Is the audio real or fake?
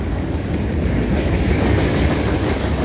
fake